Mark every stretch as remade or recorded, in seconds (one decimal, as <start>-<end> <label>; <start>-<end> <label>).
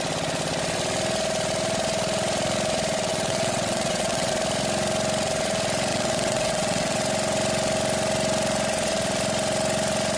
0.0-3.1 recorded; 3.1-4.3 remade; 4.3-5.9 recorded; 5.9-7.0 remade; 7.0-10.2 recorded